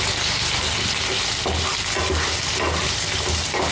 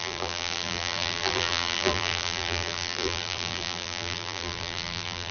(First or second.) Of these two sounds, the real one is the first